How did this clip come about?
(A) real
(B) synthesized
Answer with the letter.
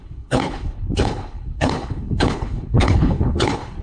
B